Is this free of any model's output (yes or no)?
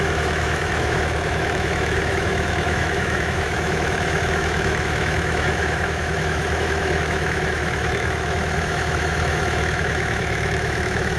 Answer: no